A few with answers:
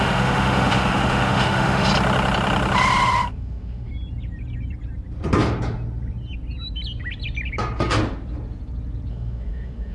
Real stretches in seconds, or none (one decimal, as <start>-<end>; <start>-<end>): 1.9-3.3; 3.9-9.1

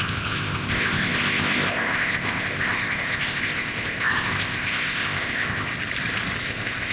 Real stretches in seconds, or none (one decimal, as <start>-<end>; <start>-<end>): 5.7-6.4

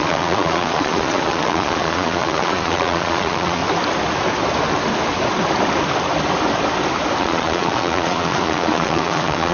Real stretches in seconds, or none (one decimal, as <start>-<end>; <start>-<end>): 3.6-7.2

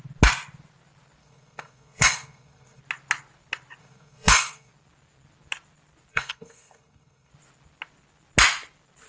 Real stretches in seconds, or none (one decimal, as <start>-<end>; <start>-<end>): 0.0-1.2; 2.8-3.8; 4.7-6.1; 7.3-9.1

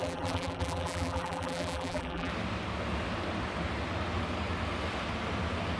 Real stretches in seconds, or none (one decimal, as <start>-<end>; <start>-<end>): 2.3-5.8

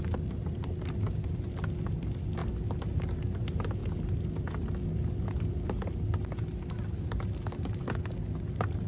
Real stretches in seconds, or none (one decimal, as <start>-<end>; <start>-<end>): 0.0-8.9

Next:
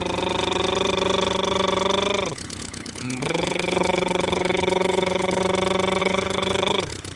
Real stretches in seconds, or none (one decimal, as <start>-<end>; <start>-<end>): 0.0-2.3; 5.4-6.0

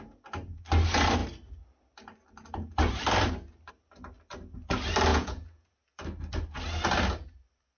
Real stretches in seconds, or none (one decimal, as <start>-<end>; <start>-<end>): 0.0-5.1; 5.7-7.8